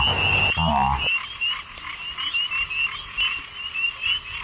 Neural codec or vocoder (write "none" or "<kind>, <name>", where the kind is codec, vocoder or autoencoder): none